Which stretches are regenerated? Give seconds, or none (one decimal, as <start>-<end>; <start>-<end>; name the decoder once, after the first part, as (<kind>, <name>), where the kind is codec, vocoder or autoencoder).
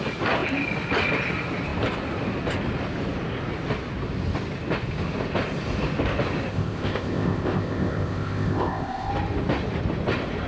6.5-9.1 (codec, ZipCodec)